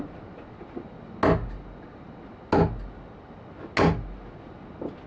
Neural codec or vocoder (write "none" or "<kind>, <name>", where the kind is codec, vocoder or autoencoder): none